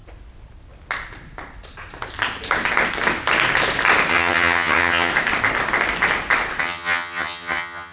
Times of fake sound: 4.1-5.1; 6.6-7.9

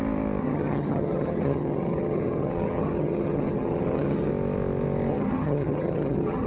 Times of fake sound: 0.4-4.3; 5.1-6.5

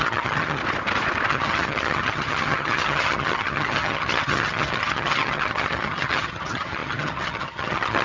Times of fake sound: 0.0-0.6; 1.3-8.0

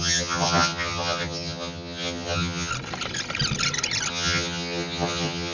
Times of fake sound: 0.0-2.7; 4.1-5.5

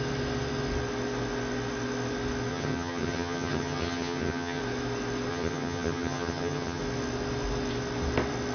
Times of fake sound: 2.5-4.6; 5.3-6.8

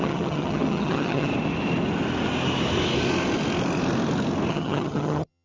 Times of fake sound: 0.0-1.3; 4.5-5.4